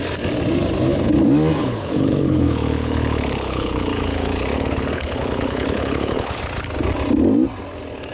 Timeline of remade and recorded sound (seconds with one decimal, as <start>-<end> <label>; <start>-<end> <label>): 0.0-1.6 recorded; 1.6-6.4 remade; 6.4-8.1 recorded